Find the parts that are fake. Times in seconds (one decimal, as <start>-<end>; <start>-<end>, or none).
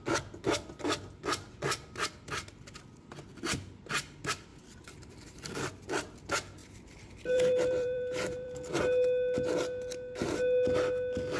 4.5-5.9; 6.6-8.7